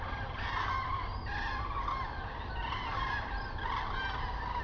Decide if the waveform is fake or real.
real